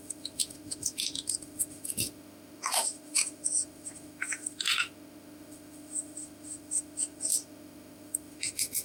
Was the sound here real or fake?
fake